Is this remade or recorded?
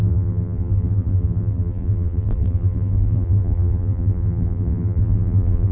remade